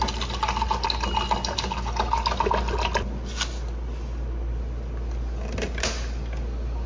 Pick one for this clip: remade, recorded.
recorded